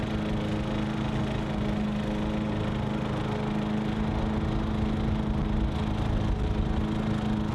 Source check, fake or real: real